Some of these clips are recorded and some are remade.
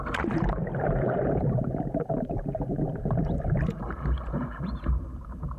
remade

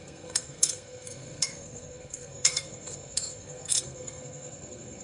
remade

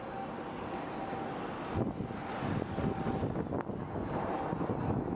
recorded